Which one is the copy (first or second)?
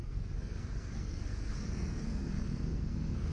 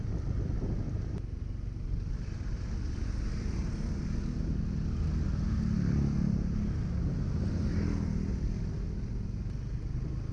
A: first